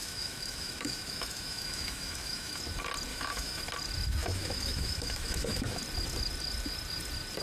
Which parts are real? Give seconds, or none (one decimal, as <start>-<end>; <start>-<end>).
2.6-3.1; 3.6-4.2; 5.8-7.4